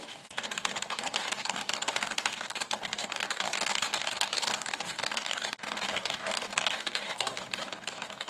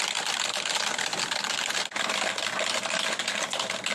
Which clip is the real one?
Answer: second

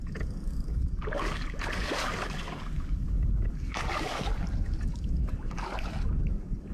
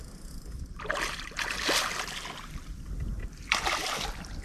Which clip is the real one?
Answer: second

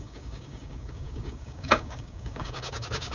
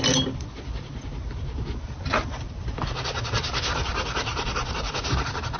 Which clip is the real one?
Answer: second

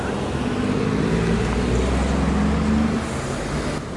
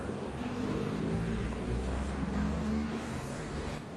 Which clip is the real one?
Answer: first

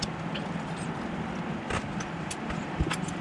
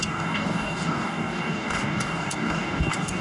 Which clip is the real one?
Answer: first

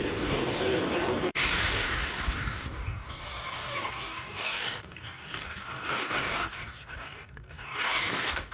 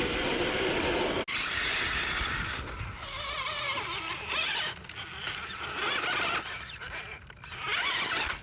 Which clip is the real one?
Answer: second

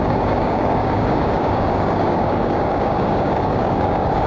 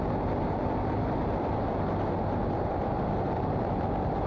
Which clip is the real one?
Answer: second